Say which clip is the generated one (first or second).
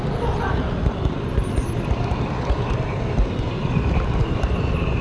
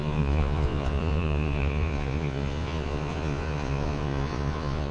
second